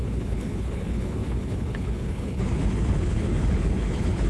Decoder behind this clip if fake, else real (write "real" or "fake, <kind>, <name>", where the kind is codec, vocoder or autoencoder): fake, codec, HILCodec